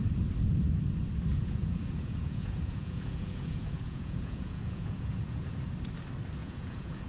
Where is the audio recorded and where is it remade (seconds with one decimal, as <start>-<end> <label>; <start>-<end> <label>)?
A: 0.0-1.3 recorded; 1.3-5.6 remade; 5.6-6.4 recorded; 6.4-7.1 remade